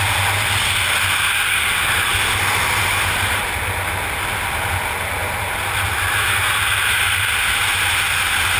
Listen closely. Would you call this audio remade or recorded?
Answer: recorded